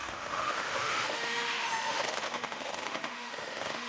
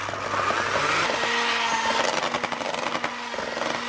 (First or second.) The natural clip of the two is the second